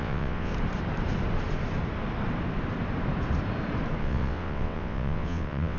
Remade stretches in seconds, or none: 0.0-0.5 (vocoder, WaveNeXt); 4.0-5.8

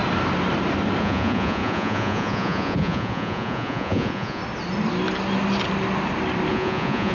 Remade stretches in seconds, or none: 1.0-4.4 (vocoder, Vocos); 6.5-7.1

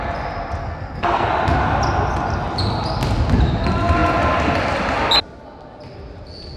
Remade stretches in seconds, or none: 0.6-1.3 (codec, SNAC)